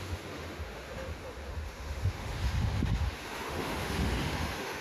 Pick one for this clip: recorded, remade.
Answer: remade